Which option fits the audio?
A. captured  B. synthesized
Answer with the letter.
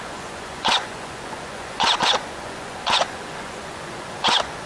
B